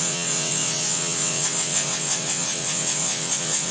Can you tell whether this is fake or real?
fake